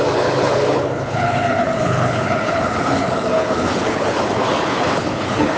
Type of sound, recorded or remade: remade